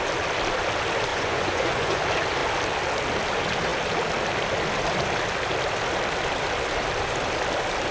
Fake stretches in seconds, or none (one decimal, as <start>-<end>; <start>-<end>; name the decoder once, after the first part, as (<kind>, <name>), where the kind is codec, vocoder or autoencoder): 1.1-2.0 (vocoder, Vocos)